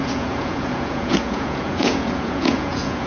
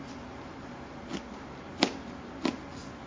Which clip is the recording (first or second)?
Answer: second